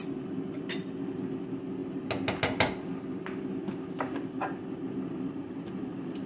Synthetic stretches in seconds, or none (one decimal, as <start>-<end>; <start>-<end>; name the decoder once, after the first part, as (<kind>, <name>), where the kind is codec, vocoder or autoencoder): none